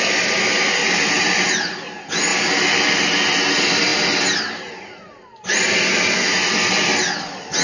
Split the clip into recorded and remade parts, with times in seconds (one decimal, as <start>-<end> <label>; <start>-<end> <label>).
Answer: 0.0-0.8 recorded; 0.8-1.7 remade; 1.7-7.6 recorded